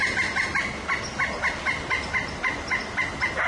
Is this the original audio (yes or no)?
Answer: yes